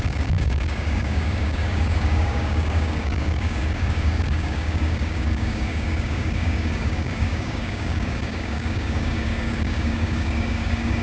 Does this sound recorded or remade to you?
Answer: remade